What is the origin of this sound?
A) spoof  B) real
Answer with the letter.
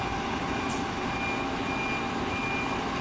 B